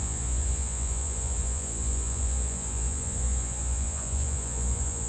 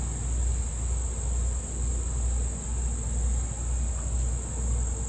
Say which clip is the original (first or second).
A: second